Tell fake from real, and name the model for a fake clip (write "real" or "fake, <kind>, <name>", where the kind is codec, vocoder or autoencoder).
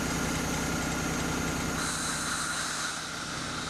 real